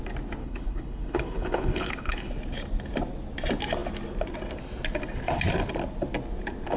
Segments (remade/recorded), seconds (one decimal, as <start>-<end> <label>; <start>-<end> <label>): 0.0-0.4 recorded; 0.4-2.3 remade; 2.3-6.8 recorded